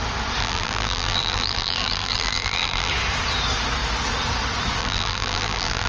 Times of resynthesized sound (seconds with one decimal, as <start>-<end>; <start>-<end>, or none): 0.4-2.9; 4.8-5.9